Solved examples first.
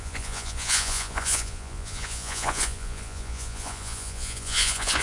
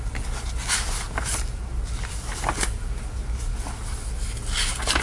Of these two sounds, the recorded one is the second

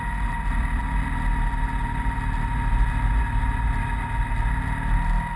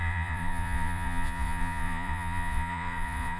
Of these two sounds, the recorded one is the first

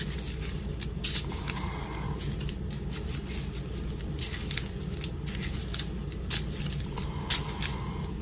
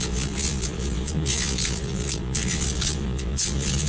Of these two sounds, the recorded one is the first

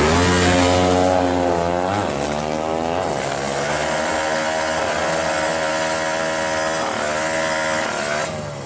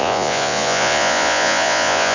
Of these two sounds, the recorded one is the first